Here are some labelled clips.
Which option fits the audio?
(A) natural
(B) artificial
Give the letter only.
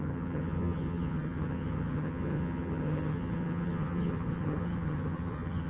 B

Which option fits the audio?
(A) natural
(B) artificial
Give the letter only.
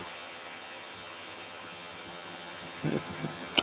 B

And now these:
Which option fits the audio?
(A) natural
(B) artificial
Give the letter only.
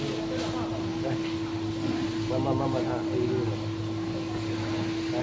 A